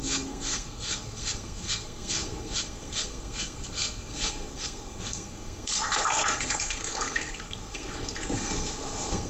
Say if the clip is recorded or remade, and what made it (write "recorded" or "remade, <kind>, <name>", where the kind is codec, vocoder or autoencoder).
remade, codec, SNAC